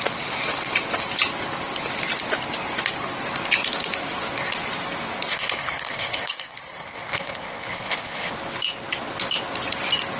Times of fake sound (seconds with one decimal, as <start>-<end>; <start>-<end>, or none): 5.3-8.3